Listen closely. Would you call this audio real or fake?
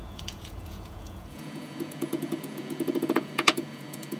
fake